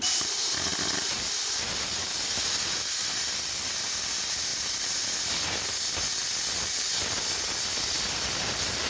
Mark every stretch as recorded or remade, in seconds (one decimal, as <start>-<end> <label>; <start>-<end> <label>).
0.0-8.9 recorded